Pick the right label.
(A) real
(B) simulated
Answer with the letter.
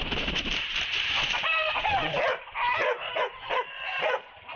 B